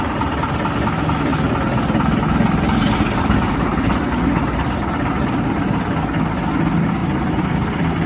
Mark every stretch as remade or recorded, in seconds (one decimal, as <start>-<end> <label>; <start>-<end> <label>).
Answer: 0.0-7.0 recorded; 7.0-8.1 remade